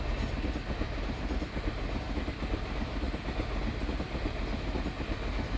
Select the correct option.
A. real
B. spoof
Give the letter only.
A